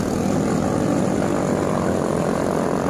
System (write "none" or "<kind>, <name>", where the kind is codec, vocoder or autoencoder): none